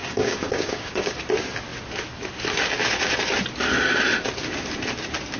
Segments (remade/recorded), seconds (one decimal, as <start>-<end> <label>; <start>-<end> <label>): 0.0-1.2 remade; 1.2-5.4 recorded